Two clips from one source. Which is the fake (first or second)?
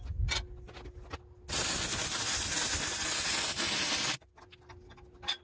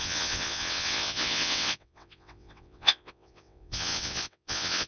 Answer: second